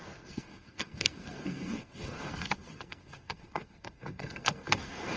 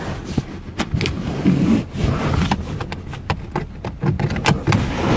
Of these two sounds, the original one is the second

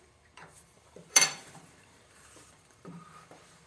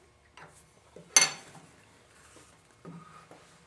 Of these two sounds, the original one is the second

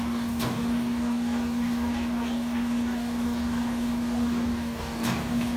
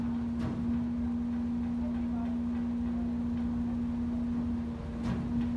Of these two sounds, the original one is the second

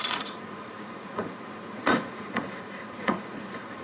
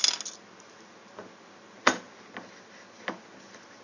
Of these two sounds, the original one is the second